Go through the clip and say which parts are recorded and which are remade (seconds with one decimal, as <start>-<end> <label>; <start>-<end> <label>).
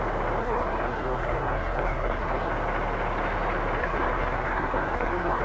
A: 0.0-0.4 recorded; 0.4-2.5 remade; 2.5-3.8 recorded; 3.8-5.4 remade